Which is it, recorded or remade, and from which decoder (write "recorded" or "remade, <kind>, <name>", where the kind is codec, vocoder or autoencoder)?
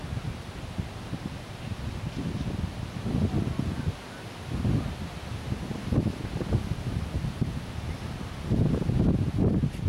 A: recorded